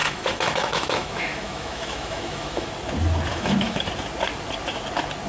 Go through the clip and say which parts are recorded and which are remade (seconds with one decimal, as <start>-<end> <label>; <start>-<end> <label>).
0.0-2.7 remade; 2.7-3.3 recorded; 3.3-3.8 remade; 3.8-5.3 recorded